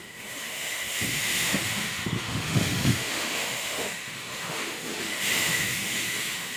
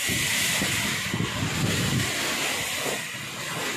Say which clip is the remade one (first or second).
first